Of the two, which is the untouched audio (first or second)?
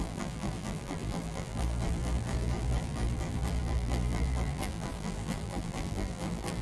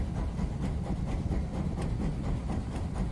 second